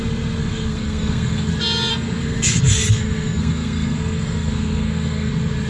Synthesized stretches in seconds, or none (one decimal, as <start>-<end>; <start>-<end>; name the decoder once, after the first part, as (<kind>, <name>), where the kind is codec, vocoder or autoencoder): 0.4-1.5 (codec, SNAC); 1.9-5.3